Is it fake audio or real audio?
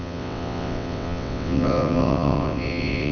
fake